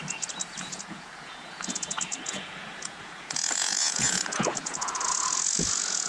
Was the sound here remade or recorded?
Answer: remade